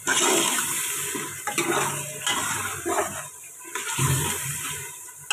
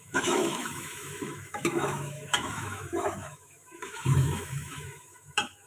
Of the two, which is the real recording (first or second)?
first